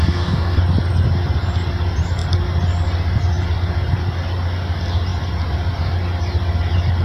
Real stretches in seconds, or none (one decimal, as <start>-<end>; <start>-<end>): 0.6-7.0